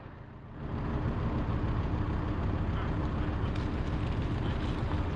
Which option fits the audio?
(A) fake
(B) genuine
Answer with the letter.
B